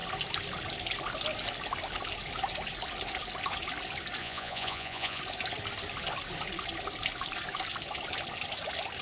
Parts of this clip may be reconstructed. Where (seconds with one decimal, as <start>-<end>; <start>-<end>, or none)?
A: 4.2-5.2